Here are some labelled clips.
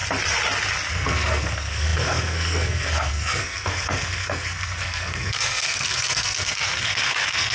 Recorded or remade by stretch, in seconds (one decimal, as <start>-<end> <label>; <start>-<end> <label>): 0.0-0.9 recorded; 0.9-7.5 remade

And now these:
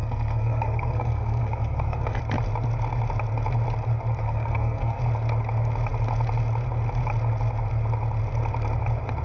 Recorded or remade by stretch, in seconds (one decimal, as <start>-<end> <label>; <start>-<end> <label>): 0.0-2.2 remade; 2.2-4.2 recorded; 4.2-5.0 remade; 5.0-9.2 recorded

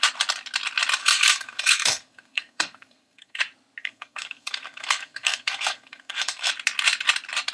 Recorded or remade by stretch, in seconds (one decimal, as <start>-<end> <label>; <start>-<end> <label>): 0.0-1.0 recorded; 1.0-3.4 remade; 3.4-3.8 recorded; 3.8-6.5 remade; 6.5-7.5 recorded

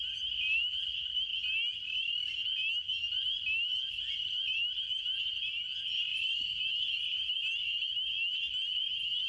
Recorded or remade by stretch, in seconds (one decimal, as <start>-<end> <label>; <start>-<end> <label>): 0.0-9.3 recorded

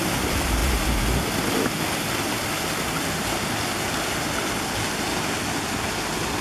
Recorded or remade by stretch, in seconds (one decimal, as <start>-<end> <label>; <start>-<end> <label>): 0.0-6.4 recorded

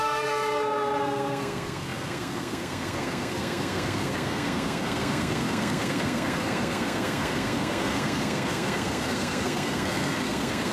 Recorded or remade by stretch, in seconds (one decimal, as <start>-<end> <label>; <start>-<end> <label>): 0.0-10.7 remade

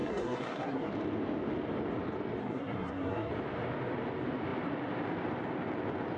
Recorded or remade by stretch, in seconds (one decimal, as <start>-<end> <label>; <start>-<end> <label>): 0.0-0.9 remade; 0.9-2.4 recorded; 2.4-3.3 remade; 3.3-6.2 recorded